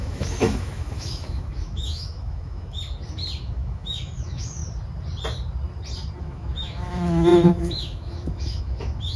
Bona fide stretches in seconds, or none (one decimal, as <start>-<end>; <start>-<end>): 2.8-3.4; 4.6-6.2